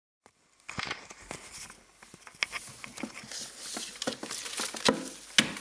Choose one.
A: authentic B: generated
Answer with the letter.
A